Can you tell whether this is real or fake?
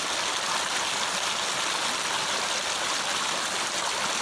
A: real